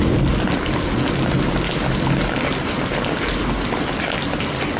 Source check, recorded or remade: recorded